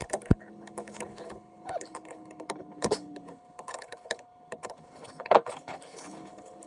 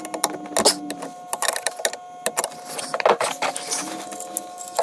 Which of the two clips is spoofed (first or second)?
first